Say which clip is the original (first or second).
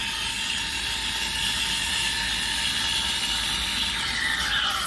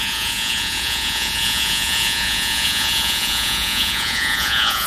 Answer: first